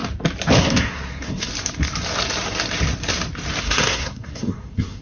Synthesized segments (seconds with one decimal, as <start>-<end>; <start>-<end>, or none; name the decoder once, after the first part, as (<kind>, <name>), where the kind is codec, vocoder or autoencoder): 0.6-1.5 (codec, SNAC); 3.6-5.0